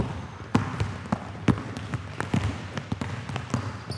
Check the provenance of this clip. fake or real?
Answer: real